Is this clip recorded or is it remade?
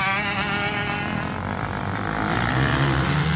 recorded